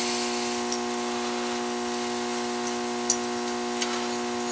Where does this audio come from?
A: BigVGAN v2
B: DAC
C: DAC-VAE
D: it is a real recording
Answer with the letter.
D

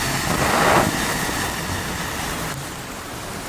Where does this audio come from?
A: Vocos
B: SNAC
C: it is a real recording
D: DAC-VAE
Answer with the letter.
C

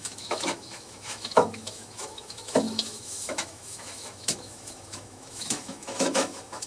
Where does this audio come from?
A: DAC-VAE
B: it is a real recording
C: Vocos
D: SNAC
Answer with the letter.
A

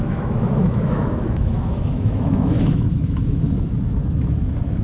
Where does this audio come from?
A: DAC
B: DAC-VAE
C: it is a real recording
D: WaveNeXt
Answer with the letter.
B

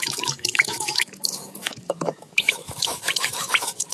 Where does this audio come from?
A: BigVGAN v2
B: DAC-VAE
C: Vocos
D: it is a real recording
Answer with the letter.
B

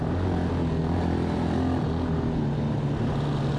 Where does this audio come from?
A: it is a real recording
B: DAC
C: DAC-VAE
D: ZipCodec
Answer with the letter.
A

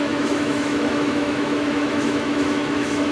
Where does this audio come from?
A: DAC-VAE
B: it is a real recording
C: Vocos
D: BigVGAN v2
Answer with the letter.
A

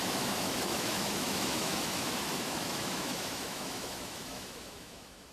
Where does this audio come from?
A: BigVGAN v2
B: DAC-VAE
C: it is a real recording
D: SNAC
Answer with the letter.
B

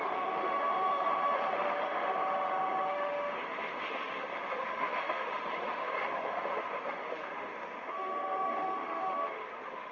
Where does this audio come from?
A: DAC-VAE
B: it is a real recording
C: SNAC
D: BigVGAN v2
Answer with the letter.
A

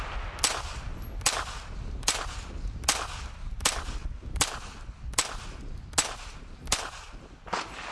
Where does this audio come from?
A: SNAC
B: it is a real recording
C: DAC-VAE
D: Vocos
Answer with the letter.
B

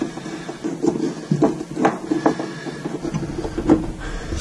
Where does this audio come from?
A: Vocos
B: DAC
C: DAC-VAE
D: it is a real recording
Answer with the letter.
D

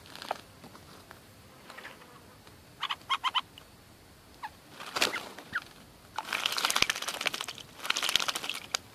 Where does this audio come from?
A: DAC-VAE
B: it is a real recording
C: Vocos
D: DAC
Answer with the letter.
B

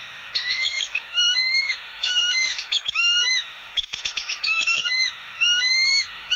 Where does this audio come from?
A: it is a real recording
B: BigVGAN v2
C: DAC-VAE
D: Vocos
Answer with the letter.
C